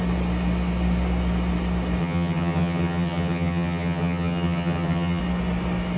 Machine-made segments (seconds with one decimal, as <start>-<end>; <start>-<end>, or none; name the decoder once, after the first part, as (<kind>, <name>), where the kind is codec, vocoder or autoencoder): 2.0-5.2 (vocoder, HiFi-GAN)